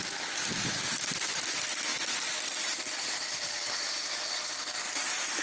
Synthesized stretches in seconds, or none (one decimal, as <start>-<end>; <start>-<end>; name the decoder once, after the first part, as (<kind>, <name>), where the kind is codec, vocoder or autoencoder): none